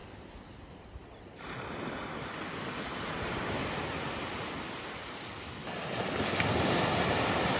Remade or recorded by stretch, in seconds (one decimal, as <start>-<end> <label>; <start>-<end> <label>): 0.0-7.6 recorded